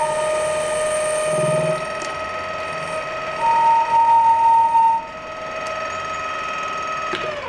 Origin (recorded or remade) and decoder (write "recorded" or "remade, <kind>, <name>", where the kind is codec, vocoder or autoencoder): recorded